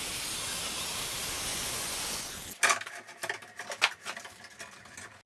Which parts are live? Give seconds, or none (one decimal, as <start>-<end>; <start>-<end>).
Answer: 0.0-1.5; 2.3-5.3

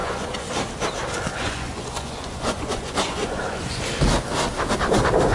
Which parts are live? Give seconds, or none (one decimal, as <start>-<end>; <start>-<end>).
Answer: 0.5-1.3; 3.8-5.3

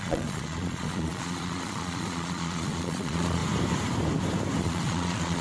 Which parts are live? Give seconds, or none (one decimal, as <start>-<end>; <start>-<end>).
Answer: 3.4-4.6

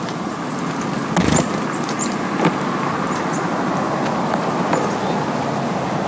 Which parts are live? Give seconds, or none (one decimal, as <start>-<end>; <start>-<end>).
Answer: 0.0-6.1

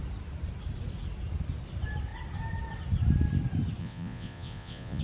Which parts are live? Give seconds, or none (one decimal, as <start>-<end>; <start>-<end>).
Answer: 0.0-3.8

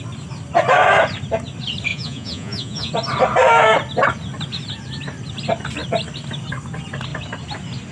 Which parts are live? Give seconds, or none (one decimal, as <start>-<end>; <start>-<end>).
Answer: 0.0-1.9; 2.9-7.9

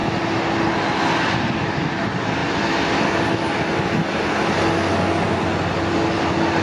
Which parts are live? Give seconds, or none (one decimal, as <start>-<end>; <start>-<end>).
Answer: 0.0-6.6